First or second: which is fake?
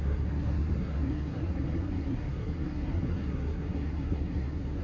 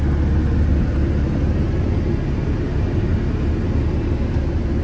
first